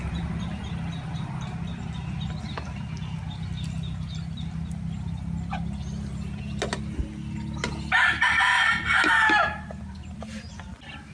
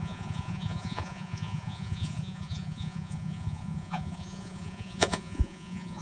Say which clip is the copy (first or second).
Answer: second